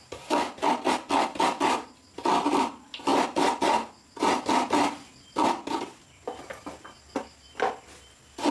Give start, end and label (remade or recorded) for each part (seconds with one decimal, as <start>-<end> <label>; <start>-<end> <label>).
0.0-8.5 recorded